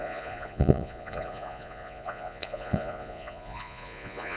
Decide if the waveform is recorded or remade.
remade